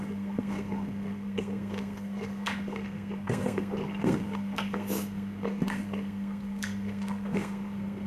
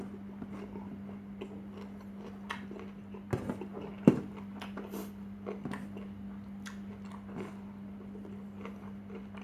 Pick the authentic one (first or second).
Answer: second